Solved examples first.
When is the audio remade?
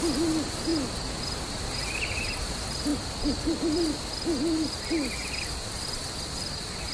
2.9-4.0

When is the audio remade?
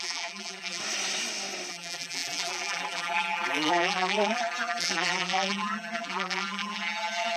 0.0-0.8; 1.7-7.4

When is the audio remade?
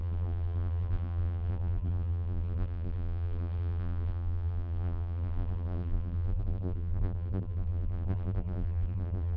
0.0-9.4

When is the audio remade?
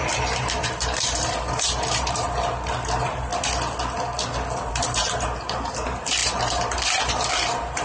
0.0-3.3; 4.7-7.8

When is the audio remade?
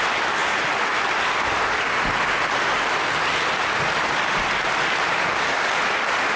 none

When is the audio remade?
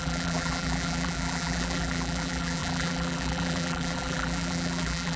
0.0-5.2